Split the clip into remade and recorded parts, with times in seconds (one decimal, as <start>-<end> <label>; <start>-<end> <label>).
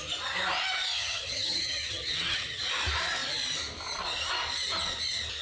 0.0-1.0 recorded; 1.0-2.6 remade; 2.6-5.4 recorded